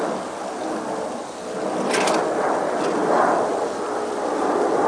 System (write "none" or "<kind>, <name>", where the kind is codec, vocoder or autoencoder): none